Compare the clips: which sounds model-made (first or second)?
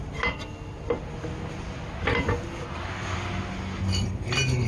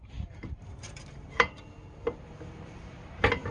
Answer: second